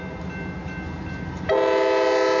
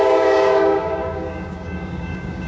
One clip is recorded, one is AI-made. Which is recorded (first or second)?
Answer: first